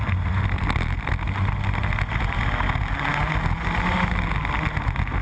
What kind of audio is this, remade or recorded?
recorded